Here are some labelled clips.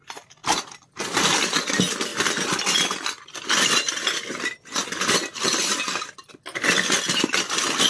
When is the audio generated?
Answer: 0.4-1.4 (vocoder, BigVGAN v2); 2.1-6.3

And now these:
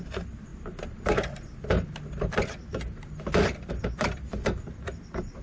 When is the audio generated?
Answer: none

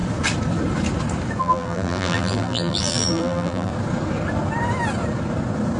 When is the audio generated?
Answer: 1.4-3.7 (vocoder, BigVGAN v2)

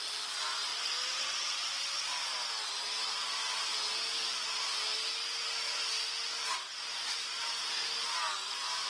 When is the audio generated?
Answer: 0.0-0.7 (vocoder, BigVGAN v2); 1.3-2.3; 7.0-7.8

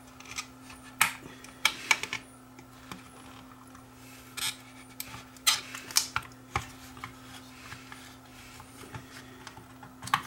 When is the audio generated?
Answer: 8.3-9.2 (vocoder, BigVGAN v2)

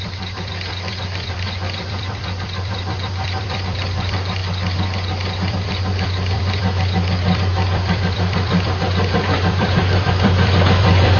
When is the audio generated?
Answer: 0.0-4.4 (vocoder, BigVGAN v2); 5.5-11.2

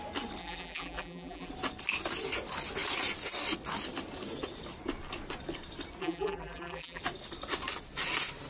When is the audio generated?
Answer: 0.4-1.5 (vocoder, BigVGAN v2); 6.0-7.0

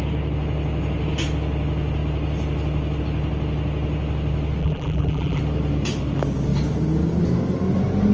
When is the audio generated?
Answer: 4.6-5.4 (vocoder, BigVGAN v2)